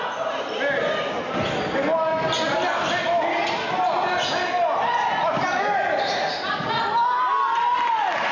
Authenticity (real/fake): real